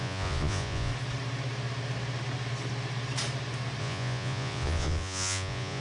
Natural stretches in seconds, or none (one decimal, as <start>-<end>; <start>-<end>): 0.9-3.8